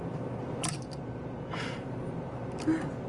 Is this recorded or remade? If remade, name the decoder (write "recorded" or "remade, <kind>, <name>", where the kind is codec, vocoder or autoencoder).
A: recorded